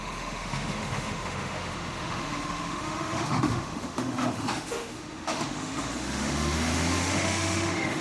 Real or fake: fake